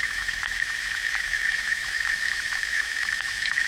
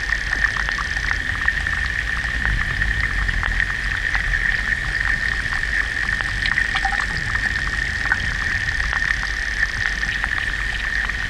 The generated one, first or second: first